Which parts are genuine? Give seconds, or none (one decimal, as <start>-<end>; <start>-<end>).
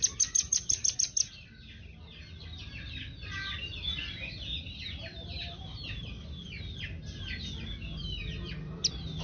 0.0-9.2